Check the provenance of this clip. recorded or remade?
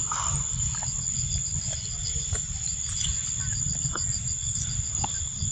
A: recorded